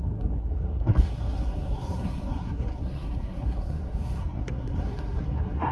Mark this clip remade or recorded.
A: remade